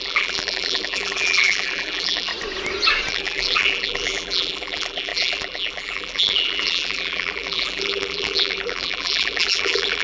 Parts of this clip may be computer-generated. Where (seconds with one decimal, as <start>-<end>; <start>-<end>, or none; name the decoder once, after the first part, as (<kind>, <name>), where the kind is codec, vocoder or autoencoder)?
0.0-2.3 (vocoder, BigVGAN v2); 3.1-10.0